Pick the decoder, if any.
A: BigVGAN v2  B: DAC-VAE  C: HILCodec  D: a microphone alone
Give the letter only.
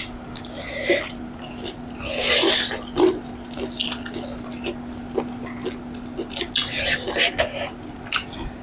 D